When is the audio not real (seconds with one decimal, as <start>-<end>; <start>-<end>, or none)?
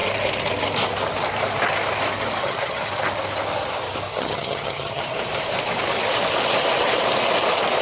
2.4-2.9; 4.1-5.0